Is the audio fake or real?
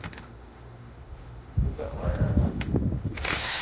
fake